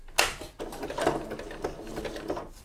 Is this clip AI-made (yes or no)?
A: no